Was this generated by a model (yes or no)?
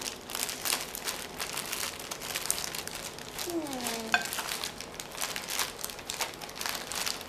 no